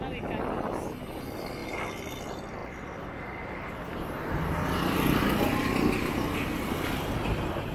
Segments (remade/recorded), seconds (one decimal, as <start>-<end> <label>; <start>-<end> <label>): 0.0-7.7 recorded